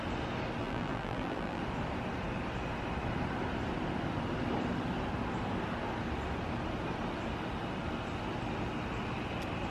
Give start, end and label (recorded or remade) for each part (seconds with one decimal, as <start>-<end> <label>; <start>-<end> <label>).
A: 0.0-0.6 recorded; 0.6-1.6 remade; 1.6-9.7 recorded